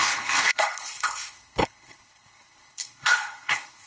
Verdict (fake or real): fake